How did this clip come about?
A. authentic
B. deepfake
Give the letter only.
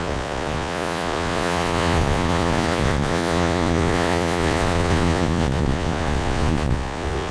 B